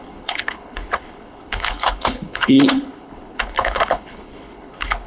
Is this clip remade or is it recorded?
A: remade